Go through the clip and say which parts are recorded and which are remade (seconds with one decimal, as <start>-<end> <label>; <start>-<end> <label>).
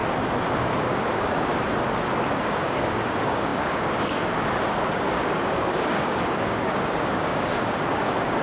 0.0-0.5 recorded; 0.5-1.5 remade; 1.5-2.4 recorded; 2.4-8.4 remade